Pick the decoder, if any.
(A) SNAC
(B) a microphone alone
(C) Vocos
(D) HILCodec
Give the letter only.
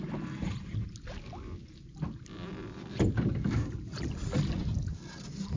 B